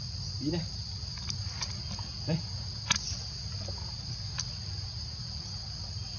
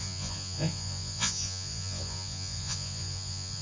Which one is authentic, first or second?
first